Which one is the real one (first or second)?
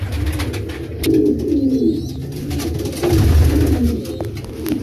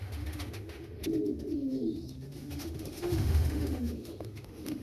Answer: first